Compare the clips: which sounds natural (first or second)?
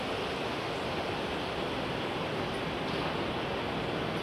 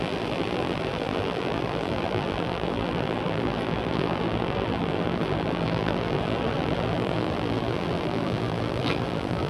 first